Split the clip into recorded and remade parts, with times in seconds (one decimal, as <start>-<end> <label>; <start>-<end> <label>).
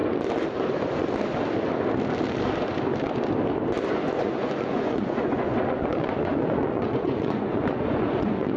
0.0-3.9 recorded; 3.9-8.6 remade